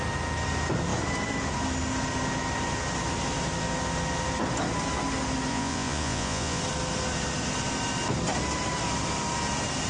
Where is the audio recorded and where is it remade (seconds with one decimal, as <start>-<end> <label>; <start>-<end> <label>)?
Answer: 0.0-5.5 recorded; 5.5-6.6 remade; 6.6-9.9 recorded